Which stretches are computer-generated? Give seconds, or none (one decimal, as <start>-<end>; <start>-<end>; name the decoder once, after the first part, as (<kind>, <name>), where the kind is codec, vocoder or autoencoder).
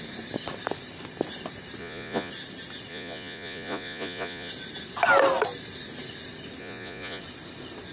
1.8-2.3 (vocoder, Vocos); 2.9-4.5; 6.6-7.2